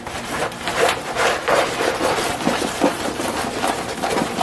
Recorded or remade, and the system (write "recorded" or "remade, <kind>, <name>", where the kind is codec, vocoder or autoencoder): remade, vocoder, BigVGAN v2